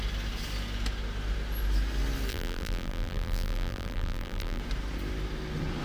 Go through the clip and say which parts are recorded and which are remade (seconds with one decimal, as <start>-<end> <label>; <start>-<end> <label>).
0.0-2.3 recorded; 2.3-4.6 remade; 4.6-5.8 recorded